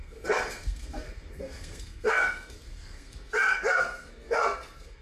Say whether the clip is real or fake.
fake